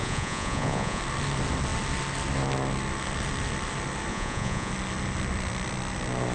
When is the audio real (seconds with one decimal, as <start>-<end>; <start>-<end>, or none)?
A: 1.0-4.1; 4.7-6.3